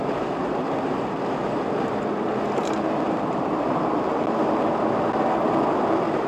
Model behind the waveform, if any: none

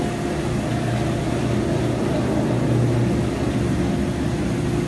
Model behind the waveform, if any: none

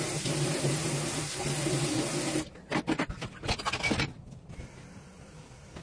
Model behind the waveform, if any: none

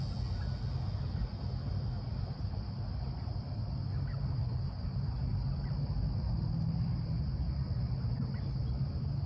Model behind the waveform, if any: none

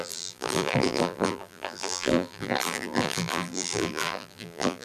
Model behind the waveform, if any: vocoder, BigVGAN v2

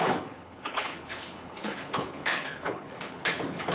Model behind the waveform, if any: codec, HILCodec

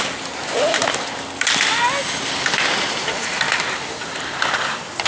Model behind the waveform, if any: none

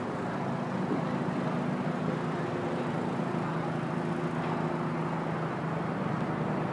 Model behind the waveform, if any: none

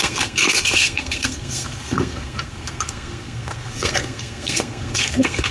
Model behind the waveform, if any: codec, SNAC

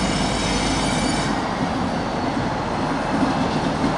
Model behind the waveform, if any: none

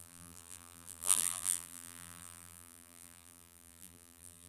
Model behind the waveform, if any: vocoder, BigVGAN v2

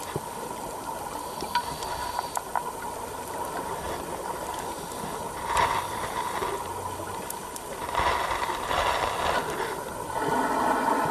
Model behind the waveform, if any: none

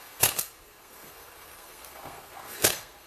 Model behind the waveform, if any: codec, SNAC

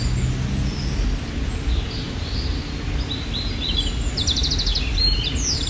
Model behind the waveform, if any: none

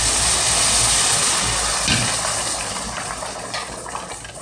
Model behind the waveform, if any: none